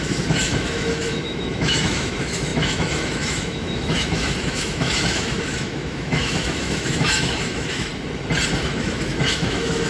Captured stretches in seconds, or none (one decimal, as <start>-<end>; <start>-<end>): 7.9-8.6